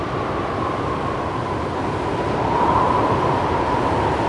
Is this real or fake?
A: real